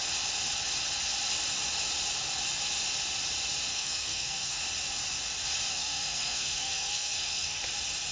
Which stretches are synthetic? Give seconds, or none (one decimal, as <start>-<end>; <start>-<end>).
3.7-4.6; 5.7-7.6